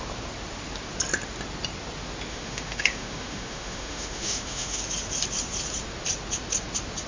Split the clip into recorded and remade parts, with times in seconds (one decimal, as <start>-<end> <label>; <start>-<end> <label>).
0.0-2.3 recorded; 2.3-4.8 remade; 4.8-7.1 recorded